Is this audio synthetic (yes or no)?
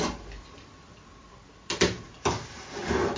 no